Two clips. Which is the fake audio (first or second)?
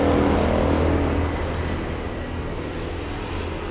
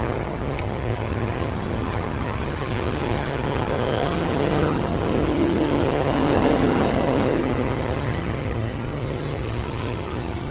second